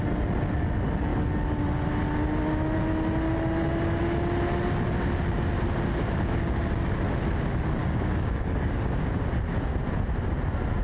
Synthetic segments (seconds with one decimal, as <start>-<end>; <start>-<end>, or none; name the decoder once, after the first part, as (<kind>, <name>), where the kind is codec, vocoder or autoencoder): 7.8-9.2 (codec, DAC)